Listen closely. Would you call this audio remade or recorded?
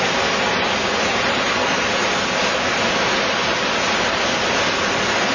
recorded